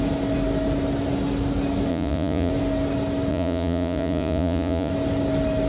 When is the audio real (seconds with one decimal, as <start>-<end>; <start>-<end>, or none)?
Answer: 0.0-1.9; 2.5-3.3; 4.9-5.7

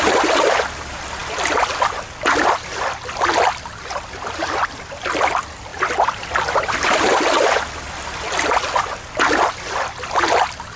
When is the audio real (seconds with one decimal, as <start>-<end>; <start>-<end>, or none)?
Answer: 0.0-1.2; 2.7-5.7; 7.9-10.8

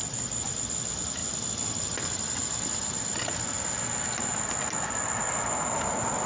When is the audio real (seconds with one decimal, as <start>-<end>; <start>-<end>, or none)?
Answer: 0.0-6.3